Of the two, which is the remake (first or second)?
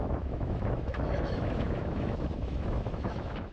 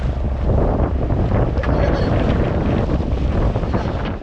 first